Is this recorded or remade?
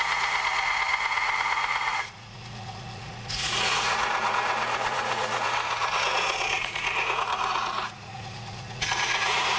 remade